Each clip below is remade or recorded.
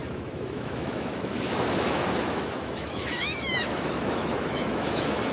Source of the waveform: remade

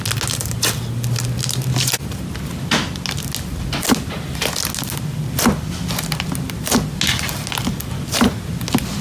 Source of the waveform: recorded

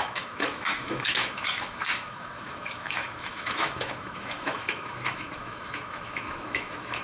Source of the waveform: remade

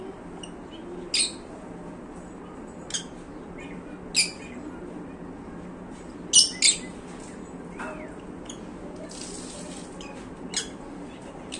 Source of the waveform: recorded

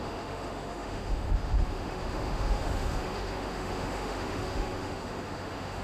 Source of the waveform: remade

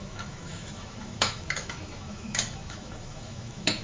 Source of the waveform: remade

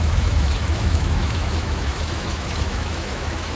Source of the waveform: remade